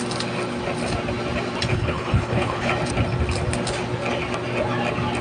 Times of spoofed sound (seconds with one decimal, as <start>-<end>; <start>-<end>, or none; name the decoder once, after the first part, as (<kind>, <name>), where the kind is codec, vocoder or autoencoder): 1.7-2.7 (codec, HILCodec)